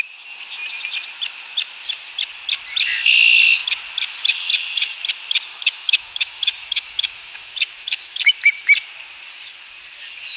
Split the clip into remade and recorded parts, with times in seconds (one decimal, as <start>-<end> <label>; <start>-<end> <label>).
0.0-5.5 recorded; 5.5-8.3 remade; 8.3-10.4 recorded